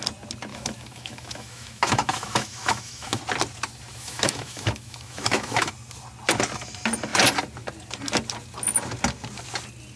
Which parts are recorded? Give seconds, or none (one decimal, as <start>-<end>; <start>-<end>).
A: 0.0-0.5; 3.2-3.9; 5.7-10.0